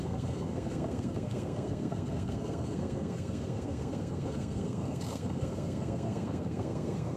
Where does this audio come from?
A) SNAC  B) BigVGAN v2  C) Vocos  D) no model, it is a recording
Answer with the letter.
A